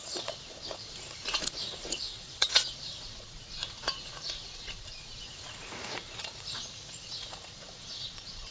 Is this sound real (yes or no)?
no